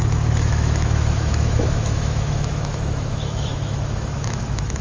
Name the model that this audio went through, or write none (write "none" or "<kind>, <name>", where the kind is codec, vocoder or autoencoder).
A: autoencoder, DAC-VAE